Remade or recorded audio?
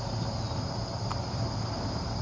recorded